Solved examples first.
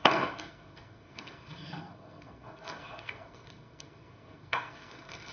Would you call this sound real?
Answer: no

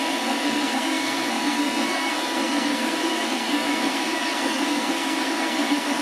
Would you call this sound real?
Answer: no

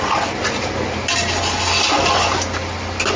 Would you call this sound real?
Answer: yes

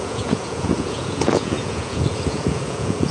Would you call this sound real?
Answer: no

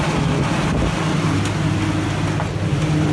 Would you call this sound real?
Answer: yes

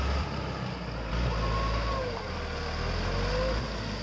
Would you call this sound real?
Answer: yes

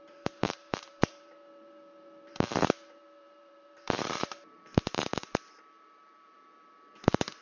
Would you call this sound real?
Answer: no